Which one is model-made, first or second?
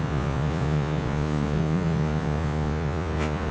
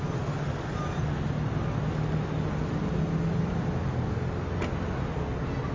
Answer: first